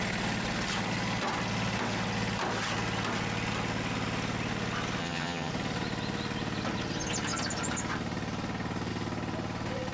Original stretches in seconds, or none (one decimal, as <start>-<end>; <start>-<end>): 0.0-5.0; 5.5-9.9